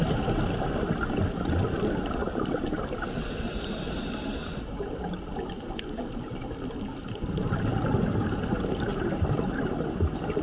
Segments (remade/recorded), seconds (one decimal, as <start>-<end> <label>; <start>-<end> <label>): 0.0-2.2 recorded; 2.2-5.1 remade; 5.1-8.9 recorded; 8.9-9.6 remade; 9.6-10.4 recorded